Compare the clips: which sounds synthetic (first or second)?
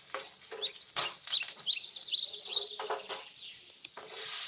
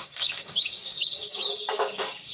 second